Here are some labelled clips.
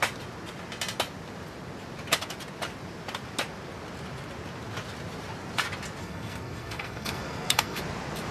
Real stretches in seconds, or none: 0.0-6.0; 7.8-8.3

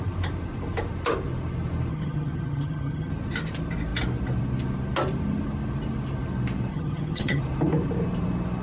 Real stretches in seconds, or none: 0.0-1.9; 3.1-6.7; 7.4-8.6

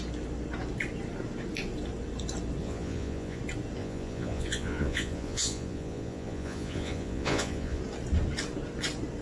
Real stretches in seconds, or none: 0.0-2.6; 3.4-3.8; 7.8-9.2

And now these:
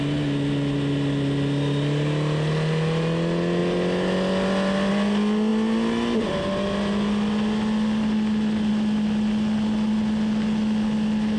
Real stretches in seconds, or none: 0.0-11.4